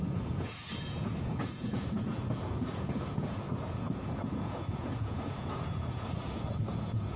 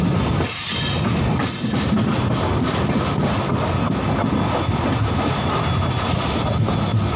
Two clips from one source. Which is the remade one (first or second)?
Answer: first